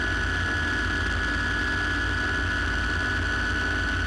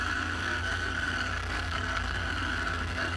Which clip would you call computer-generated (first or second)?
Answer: second